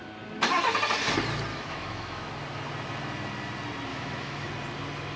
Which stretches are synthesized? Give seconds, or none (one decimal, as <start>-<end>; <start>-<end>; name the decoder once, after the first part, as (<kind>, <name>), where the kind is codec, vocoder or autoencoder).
1.5-2.3 (autoencoder, DAC-VAE); 3.9-4.5

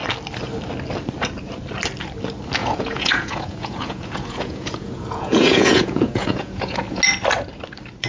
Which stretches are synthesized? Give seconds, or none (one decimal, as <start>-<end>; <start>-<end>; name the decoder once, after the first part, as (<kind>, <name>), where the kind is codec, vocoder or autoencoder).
2.6-7.0 (vocoder, Vocos)

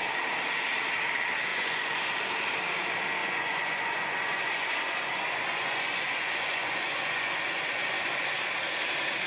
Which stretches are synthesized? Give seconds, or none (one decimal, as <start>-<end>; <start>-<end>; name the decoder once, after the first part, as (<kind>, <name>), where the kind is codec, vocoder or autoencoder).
1.5-2.0 (vocoder, Vocos); 3.2-8.0